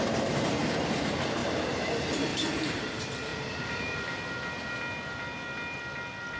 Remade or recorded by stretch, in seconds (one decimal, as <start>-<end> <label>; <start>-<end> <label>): 0.0-1.4 recorded; 1.4-1.9 remade; 1.9-2.3 recorded; 2.3-2.9 remade; 2.9-3.3 recorded; 3.3-4.1 remade; 4.1-6.4 recorded